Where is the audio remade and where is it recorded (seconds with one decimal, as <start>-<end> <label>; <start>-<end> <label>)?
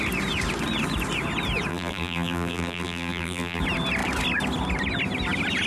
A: 0.0-1.7 recorded; 1.7-3.6 remade; 3.6-5.7 recorded